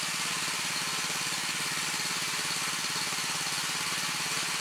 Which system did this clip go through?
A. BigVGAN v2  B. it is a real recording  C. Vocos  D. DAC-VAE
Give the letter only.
B